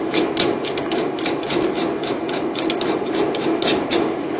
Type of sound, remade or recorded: recorded